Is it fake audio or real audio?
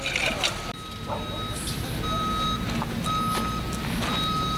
real